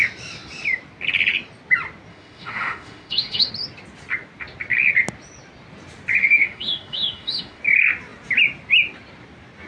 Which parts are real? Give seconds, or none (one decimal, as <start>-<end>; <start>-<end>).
0.0-2.1; 3.5-6.2; 7.6-9.7